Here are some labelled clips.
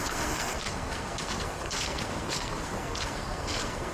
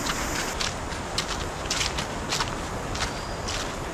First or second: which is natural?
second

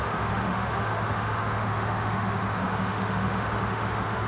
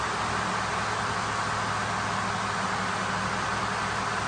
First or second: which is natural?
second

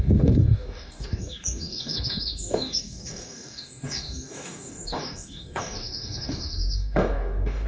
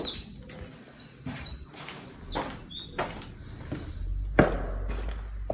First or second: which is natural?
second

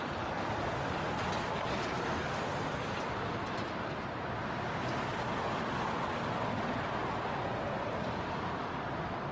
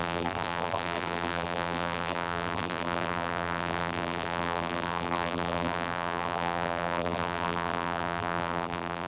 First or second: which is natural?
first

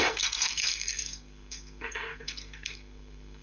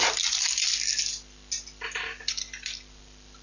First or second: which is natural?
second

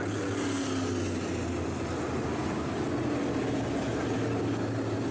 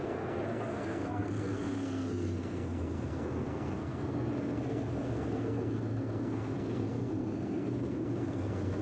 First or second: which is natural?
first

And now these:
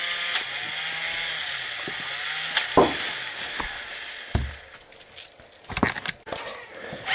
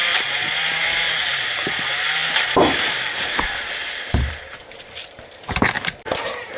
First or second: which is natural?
first